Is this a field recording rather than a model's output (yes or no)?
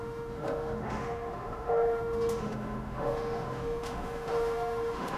no